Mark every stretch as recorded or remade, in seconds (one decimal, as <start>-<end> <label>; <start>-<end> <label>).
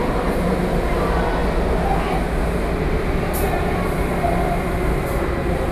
0.0-5.7 recorded